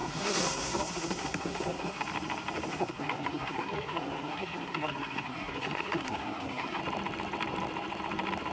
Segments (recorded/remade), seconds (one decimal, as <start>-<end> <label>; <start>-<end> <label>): 0.0-2.0 remade; 2.0-2.7 recorded; 2.7-6.8 remade; 6.8-8.5 recorded